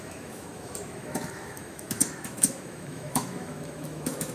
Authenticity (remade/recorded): remade